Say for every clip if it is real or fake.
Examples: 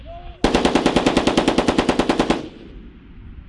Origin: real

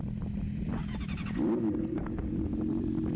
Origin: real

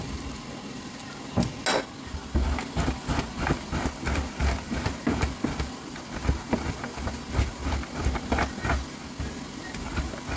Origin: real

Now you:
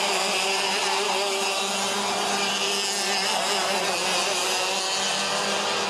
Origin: real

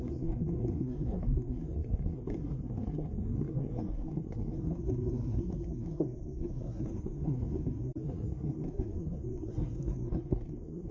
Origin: fake